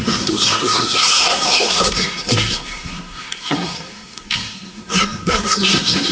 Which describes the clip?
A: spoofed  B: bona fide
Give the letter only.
A